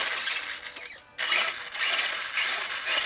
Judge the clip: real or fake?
real